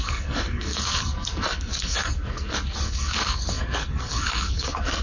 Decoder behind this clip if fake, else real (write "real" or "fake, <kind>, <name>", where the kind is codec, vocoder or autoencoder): fake, codec, SNAC